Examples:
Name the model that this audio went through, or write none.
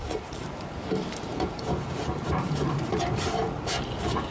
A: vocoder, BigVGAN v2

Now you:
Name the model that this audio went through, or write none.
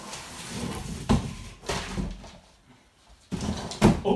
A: none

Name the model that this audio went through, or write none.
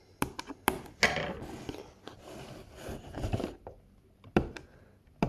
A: none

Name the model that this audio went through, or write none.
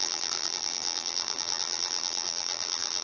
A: vocoder, BigVGAN v2